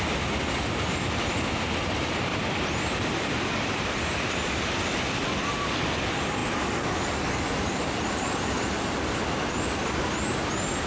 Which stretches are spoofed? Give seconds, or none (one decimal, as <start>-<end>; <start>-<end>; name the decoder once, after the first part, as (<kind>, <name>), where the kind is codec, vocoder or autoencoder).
2.3-4.6 (vocoder, BigVGAN v2)